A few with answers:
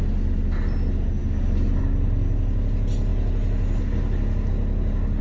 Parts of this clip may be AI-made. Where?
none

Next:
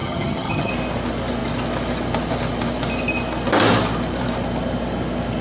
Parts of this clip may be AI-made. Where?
0.0-0.7 (vocoder, HiFi-GAN)

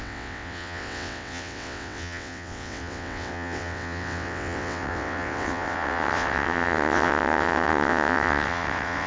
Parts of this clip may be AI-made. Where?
0.0-9.1 (vocoder, WaveNeXt)

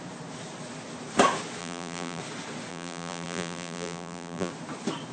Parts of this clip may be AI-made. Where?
1.6-2.2 (vocoder, BigVGAN v2); 2.7-4.5

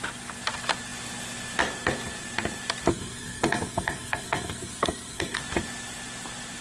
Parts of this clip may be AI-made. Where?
2.9-5.4 (codec, SNAC)

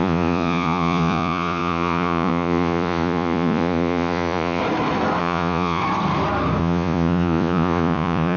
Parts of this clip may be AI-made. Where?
0.0-4.6 (vocoder, Vocos); 5.2-5.8; 6.6-8.4